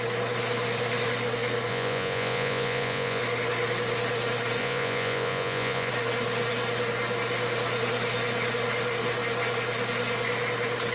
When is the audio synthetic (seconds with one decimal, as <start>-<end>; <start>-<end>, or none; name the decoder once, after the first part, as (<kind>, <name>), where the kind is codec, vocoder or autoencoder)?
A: 1.7-3.2 (vocoder, Vocos); 4.6-5.9